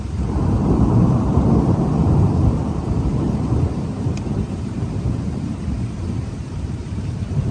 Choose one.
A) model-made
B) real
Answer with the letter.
A